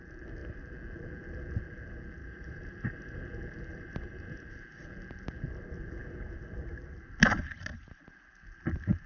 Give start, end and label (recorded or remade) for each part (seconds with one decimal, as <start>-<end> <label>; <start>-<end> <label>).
0.0-2.2 recorded; 2.2-3.2 remade; 3.2-3.7 recorded; 3.7-4.5 remade; 4.5-9.1 recorded